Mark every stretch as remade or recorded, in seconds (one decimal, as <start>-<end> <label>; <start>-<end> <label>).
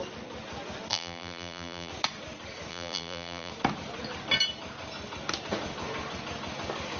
0.0-0.9 recorded; 0.9-1.9 remade; 1.9-2.7 recorded; 2.7-3.5 remade; 3.5-7.0 recorded